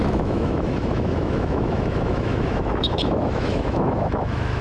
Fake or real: fake